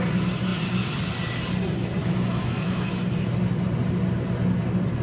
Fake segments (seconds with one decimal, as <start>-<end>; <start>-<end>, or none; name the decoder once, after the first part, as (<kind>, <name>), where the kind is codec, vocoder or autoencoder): 2.0-2.9 (autoencoder, DAC-VAE)